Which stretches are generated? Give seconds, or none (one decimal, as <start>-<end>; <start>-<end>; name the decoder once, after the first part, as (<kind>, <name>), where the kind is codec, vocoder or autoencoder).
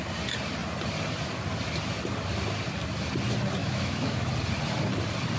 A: 3.6-4.3 (autoencoder, DAC-VAE)